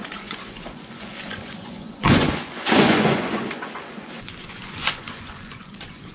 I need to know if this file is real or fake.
fake